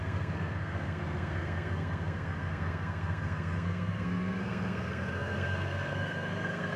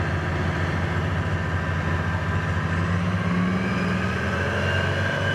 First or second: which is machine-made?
first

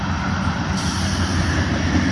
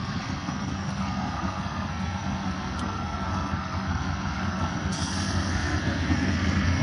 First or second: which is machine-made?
second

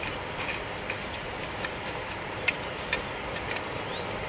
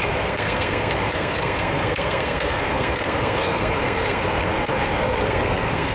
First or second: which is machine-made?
second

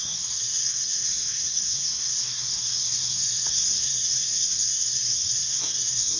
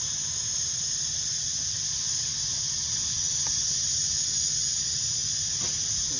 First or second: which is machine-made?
first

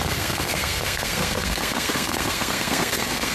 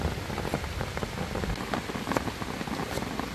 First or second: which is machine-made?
first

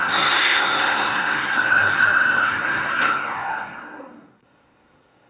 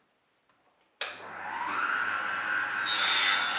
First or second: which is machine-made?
first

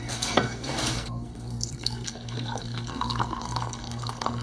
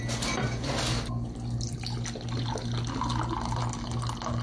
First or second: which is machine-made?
first